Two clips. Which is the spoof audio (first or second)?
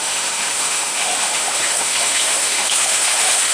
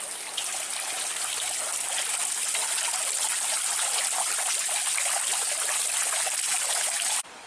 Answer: first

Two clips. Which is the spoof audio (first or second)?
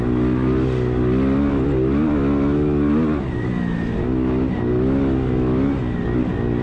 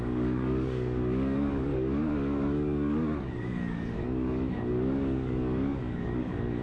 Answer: second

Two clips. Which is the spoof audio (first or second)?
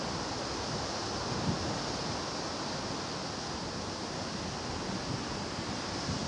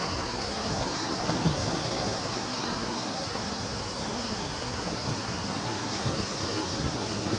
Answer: second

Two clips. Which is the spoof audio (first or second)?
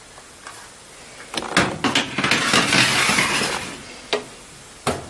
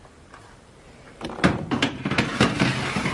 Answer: second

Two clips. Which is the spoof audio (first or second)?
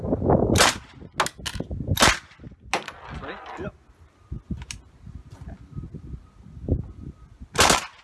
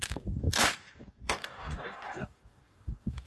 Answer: second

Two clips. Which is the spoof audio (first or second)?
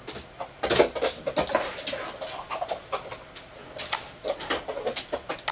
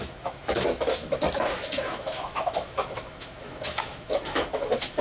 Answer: second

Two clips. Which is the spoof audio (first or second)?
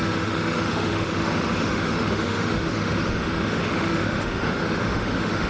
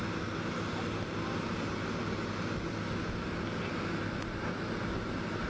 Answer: first